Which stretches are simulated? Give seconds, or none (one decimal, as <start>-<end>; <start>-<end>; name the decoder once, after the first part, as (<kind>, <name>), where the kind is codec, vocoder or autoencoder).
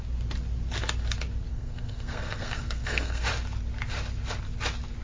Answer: 1.5-3.3 (codec, SNAC)